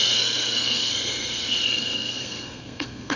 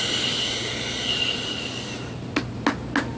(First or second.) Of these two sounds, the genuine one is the second